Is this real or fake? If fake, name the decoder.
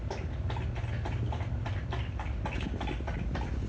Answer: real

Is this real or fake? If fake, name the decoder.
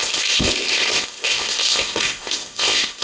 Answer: fake, codec, ZipCodec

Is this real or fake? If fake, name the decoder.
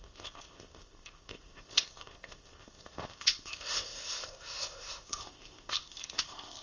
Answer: fake, codec, ZipCodec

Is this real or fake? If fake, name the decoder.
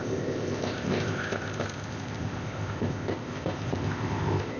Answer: fake, codec, ZipCodec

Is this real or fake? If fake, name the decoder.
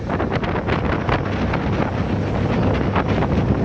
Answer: real